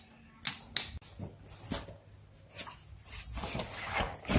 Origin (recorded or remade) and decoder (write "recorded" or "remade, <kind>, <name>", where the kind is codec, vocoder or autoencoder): recorded